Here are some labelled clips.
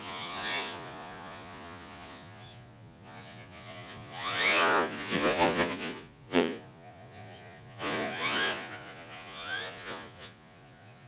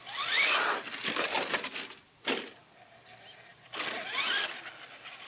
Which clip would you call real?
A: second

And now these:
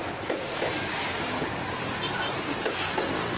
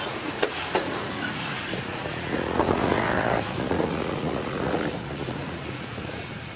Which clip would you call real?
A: first